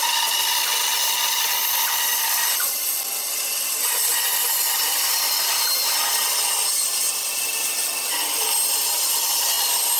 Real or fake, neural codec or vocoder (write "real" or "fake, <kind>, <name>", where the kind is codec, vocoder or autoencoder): real